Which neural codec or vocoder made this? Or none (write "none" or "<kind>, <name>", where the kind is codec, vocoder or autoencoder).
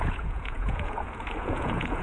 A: vocoder, Vocos